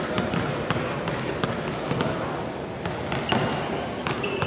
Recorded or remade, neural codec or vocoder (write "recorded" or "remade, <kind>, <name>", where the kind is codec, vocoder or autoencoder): recorded